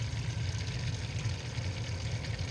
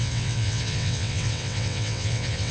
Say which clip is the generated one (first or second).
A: second